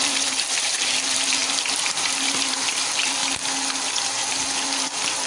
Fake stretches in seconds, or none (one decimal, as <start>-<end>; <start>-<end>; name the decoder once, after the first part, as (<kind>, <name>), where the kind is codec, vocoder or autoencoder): 0.0-3.2 (vocoder, BigVGAN v2); 4.3-5.3